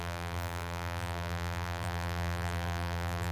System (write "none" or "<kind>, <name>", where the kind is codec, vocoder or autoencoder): vocoder, BigVGAN v2